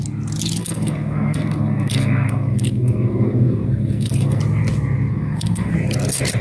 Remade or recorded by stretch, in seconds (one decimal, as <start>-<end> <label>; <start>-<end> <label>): 0.0-0.6 recorded; 0.6-4.4 remade; 4.4-5.1 recorded; 5.1-5.7 remade; 5.7-6.4 recorded